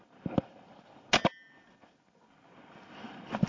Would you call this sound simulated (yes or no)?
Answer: no